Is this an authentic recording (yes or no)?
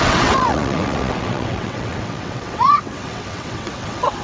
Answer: no